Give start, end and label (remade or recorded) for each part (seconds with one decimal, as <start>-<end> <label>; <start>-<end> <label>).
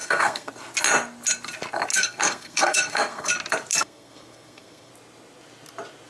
0.0-0.5 remade; 0.5-1.9 recorded; 1.9-3.3 remade; 3.3-3.7 recorded; 3.7-4.9 remade; 4.9-6.1 recorded